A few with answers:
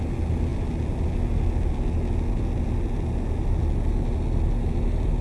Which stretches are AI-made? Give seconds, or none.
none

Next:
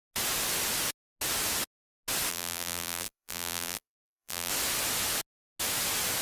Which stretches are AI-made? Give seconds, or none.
2.3-4.5 (vocoder, BigVGAN v2)

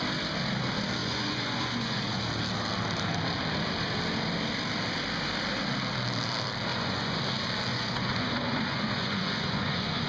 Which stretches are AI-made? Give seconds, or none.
1.0-2.2 (vocoder, Vocos); 6.7-7.2; 7.7-10.1

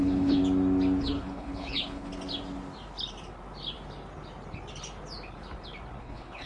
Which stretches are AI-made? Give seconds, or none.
0.0-0.4 (codec, HILCodec); 1.0-2.1; 6.0-6.5

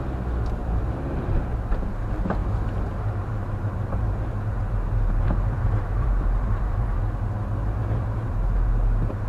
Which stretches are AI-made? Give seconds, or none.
0.6-1.4 (vocoder, BigVGAN v2); 2.4-7.0; 7.8-8.7